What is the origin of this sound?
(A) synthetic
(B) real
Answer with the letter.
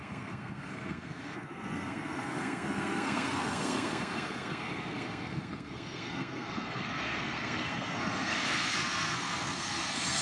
A